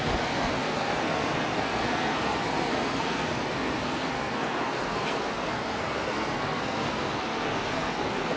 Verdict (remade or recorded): remade